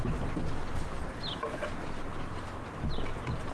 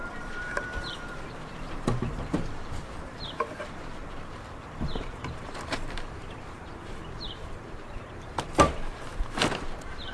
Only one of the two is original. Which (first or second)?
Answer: first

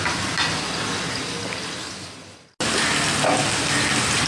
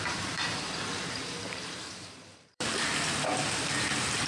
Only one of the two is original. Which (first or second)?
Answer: first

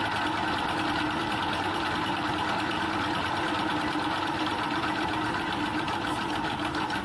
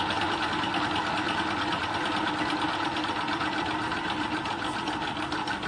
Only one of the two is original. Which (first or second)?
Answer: second